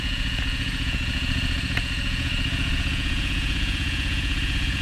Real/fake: fake